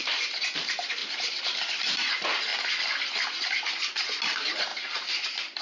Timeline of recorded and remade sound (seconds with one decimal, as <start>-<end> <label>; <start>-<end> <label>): 0.0-1.0 recorded; 1.0-1.9 remade; 1.9-4.7 recorded; 4.7-5.6 remade